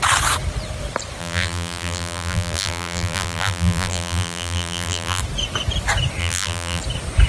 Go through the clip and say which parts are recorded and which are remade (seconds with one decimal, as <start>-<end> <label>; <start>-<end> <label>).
0.0-1.2 recorded; 1.2-5.2 remade; 5.2-6.2 recorded; 6.2-6.8 remade; 6.8-7.3 recorded